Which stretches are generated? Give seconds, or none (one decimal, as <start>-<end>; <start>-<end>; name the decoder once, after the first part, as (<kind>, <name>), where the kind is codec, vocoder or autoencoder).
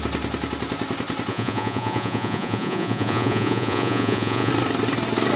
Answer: 1.3-4.5 (vocoder, Vocos)